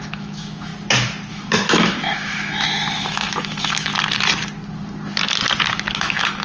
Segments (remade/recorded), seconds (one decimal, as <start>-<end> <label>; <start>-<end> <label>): 0.0-0.7 remade; 0.7-1.3 recorded; 1.3-3.9 remade; 3.9-6.0 recorded; 6.0-6.4 remade